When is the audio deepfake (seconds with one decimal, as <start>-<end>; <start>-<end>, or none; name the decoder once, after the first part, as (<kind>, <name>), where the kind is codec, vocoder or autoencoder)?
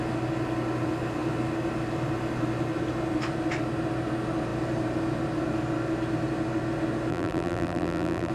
7.1-8.3 (vocoder, BigVGAN v2)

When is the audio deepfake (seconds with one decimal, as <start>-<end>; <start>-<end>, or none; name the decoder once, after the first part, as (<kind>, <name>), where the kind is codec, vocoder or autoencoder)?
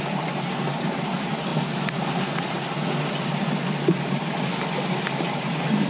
none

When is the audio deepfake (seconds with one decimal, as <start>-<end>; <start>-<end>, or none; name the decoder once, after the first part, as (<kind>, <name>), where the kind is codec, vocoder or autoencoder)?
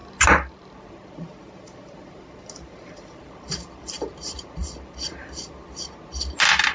0.9-5.6 (vocoder, BigVGAN v2)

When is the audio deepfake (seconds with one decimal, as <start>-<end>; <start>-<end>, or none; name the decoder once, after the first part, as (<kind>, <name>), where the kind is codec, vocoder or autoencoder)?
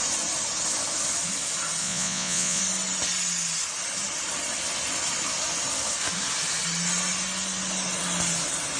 1.8-2.6 (vocoder, Vocos)